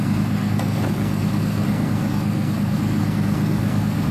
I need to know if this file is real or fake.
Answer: fake